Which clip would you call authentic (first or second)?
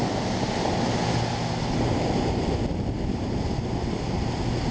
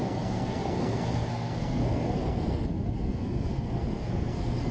first